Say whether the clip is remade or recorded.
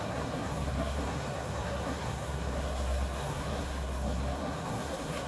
remade